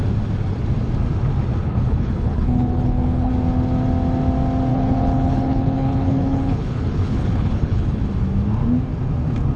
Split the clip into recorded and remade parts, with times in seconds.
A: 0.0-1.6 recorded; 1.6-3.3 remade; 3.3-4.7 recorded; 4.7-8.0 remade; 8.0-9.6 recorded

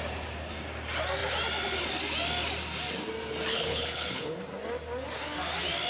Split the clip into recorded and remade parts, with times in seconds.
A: 0.0-3.5 recorded; 3.5-4.4 remade; 4.4-5.9 recorded

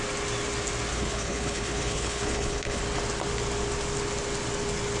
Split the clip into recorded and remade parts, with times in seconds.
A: 0.0-0.9 recorded; 0.9-2.8 remade; 2.8-5.0 recorded

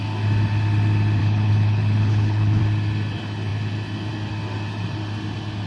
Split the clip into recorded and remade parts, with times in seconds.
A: 0.0-1.2 recorded; 1.2-2.6 remade; 2.6-5.7 recorded

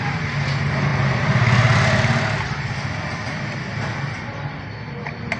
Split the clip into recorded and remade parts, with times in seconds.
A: 0.0-5.4 recorded